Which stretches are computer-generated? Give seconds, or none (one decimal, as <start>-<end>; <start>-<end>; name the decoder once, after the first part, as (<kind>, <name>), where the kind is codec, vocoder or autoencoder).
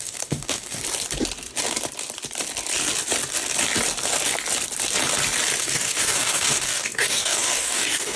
0.0-0.8 (codec, DAC); 5.6-8.2